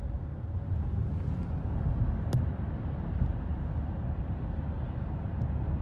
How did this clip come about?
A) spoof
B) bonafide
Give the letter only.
B